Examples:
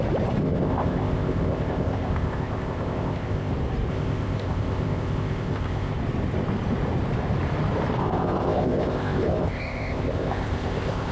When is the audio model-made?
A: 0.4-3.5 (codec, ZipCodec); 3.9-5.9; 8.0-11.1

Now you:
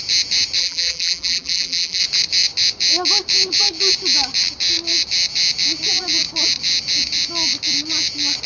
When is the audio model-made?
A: 0.6-2.0 (vocoder, BigVGAN v2)

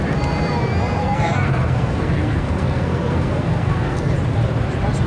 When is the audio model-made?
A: 1.0-4.1 (codec, SNAC)

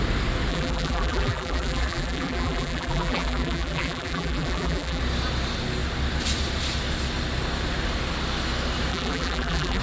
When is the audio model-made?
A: 0.5-5.0 (vocoder, BigVGAN v2); 8.9-9.8

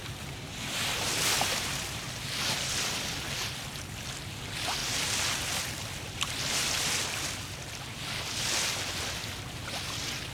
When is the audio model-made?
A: none

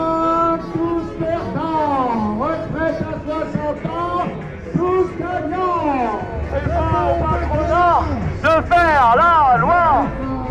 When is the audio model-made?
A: none

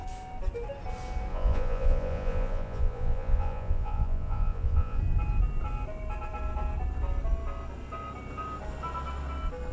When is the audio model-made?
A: 1.3-5.0 (vocoder, Vocos)

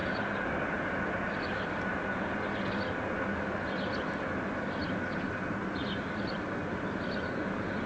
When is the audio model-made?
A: none